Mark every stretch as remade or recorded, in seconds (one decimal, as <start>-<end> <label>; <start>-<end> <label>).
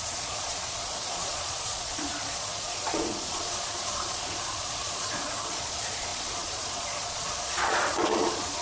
0.0-8.6 remade